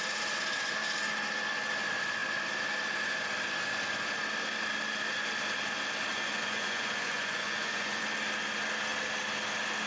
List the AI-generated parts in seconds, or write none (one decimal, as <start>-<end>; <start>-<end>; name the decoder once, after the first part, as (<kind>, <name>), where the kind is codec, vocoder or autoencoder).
6.1-8.0 (vocoder, Vocos)